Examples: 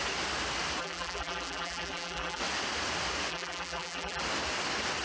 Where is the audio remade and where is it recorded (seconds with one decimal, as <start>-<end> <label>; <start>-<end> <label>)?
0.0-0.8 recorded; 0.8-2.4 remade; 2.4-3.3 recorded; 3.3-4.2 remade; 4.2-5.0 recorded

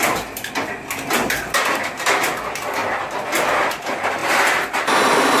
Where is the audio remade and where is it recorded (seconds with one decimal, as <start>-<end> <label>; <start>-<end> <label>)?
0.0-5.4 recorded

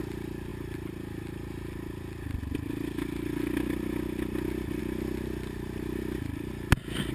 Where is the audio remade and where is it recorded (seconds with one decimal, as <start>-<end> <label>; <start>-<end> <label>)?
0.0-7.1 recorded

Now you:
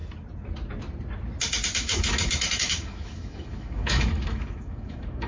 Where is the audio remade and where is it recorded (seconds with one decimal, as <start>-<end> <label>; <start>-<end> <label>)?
0.0-1.8 recorded; 1.8-5.3 remade

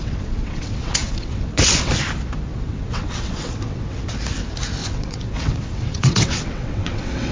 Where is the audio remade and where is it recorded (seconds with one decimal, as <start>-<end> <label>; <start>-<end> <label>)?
0.0-1.9 remade; 1.9-2.5 recorded; 2.5-4.0 remade; 4.0-4.8 recorded; 4.8-7.3 remade